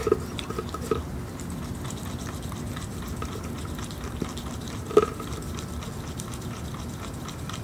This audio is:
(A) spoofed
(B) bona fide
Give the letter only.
B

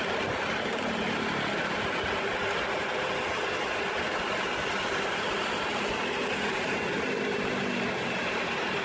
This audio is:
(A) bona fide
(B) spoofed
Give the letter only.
A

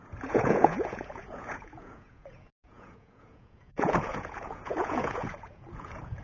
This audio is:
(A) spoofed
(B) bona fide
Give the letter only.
A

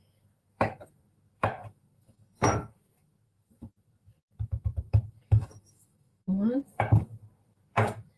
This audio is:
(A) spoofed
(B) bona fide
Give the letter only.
A